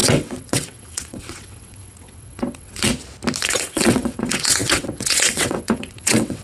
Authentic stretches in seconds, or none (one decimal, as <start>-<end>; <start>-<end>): 2.9-3.4

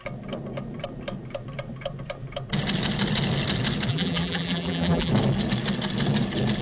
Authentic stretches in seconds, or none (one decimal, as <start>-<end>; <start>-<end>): 0.0-3.9; 5.1-6.6

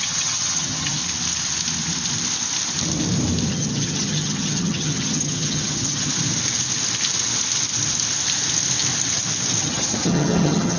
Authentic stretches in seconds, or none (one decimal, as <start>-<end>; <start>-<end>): 1.0-3.5; 6.1-9.6